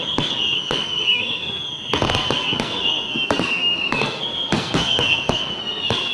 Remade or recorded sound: remade